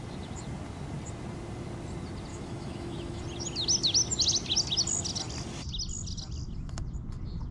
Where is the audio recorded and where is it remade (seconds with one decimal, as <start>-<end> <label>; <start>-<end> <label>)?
0.0-2.3 recorded; 2.3-3.2 remade; 3.2-7.5 recorded